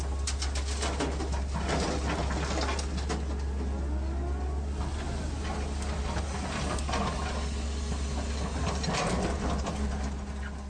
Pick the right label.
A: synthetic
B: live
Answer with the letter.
B